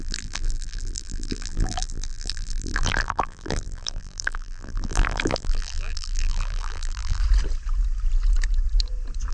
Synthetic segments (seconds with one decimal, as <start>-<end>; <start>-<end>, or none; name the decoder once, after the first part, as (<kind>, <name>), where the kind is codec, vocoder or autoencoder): 0.0-7.2 (vocoder, BigVGAN v2)